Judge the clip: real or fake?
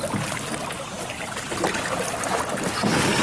real